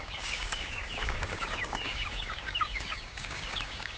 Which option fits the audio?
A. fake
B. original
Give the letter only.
A